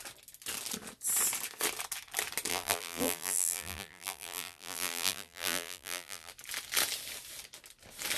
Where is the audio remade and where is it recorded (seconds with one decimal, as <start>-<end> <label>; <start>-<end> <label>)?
0.0-2.5 recorded; 2.5-6.3 remade; 6.3-8.2 recorded